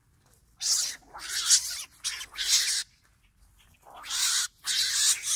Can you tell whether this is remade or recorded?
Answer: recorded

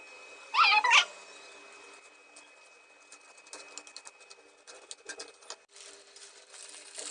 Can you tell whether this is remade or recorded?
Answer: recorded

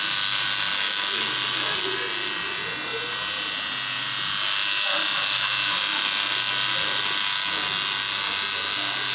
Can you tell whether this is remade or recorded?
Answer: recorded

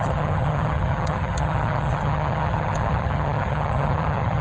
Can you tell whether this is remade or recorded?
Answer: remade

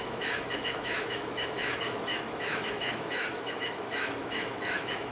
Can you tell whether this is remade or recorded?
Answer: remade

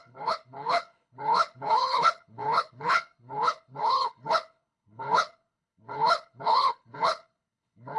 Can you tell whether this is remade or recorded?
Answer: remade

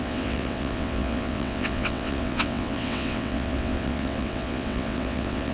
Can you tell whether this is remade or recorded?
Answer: remade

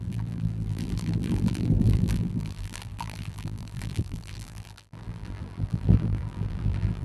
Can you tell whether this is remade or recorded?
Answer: remade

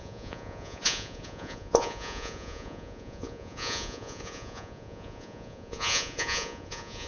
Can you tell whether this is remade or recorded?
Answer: remade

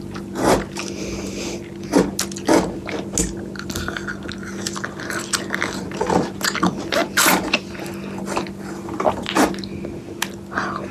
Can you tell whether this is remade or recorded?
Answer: recorded